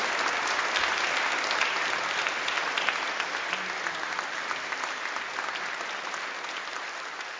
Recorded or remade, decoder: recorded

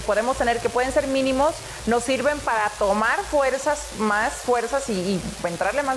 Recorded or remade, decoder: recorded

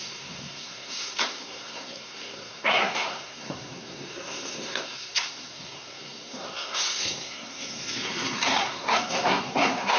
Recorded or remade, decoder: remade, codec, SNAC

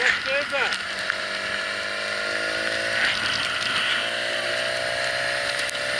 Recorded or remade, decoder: recorded